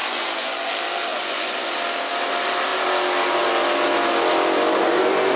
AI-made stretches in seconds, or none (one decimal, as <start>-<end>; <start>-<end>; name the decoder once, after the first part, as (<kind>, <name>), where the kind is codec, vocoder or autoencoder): 0.0-0.7 (vocoder, Vocos); 1.1-1.7